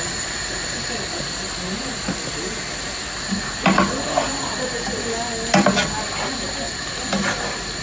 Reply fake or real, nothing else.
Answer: real